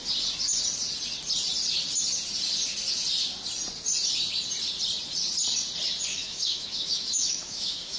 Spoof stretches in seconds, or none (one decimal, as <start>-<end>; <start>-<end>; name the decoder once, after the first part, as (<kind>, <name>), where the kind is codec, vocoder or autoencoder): 6.1-8.0 (autoencoder, DAC-VAE)

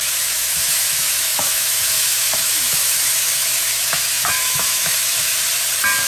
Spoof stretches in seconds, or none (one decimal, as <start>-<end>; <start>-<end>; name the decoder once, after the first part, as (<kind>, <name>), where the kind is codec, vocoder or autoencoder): 0.0-5.3 (autoencoder, DAC-VAE)

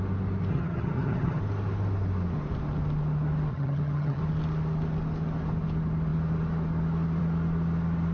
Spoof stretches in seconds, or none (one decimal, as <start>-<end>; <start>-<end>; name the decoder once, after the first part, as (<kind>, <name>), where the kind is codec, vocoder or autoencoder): 0.5-1.4 (vocoder, HiFi-GAN); 3.5-4.2

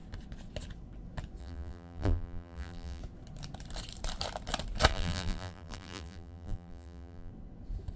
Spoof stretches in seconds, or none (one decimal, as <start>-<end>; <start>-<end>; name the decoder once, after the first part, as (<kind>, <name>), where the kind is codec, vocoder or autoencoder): 1.4-3.0 (vocoder, BigVGAN v2); 4.9-7.3